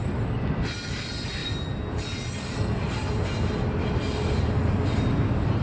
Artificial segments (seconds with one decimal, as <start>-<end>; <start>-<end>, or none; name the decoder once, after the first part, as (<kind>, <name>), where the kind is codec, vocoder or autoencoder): none